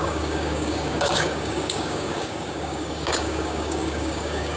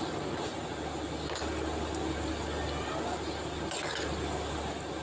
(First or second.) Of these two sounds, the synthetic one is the first